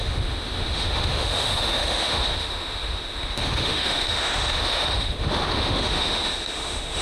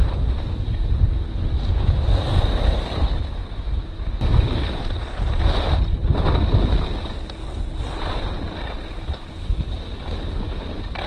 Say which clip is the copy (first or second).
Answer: first